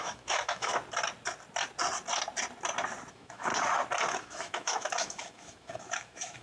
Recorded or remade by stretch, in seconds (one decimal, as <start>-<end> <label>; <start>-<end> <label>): 0.0-0.7 remade; 0.7-3.1 recorded; 3.1-3.5 remade; 3.5-4.2 recorded; 4.2-6.4 remade